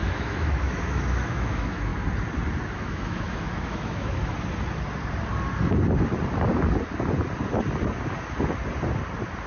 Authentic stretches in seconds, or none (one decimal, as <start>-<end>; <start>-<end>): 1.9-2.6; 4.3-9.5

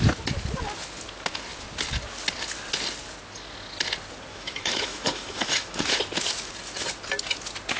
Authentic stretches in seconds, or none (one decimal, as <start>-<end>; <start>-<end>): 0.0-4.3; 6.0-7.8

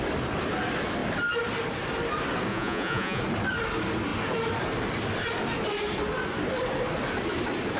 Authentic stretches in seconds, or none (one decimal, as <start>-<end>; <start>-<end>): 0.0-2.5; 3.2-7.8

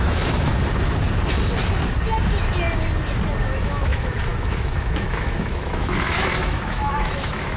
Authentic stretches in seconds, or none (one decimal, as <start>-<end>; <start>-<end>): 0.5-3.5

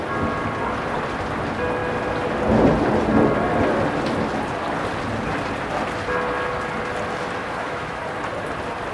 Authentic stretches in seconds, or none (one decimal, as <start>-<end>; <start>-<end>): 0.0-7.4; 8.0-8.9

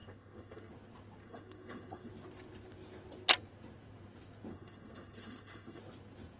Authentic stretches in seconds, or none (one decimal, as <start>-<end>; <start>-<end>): 0.7-1.2; 2.1-4.5; 5.8-6.4